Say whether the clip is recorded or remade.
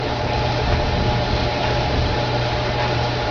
remade